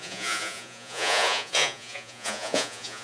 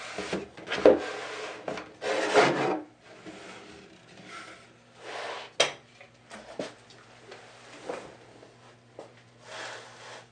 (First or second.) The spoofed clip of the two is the first